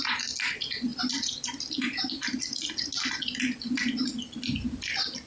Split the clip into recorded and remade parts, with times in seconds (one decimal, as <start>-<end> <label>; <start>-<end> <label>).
0.0-5.3 recorded